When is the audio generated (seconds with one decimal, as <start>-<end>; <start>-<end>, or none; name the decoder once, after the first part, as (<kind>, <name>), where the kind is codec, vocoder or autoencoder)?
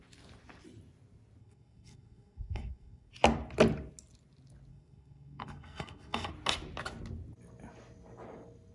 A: 1.4-3.1 (codec, SNAC); 4.7-6.3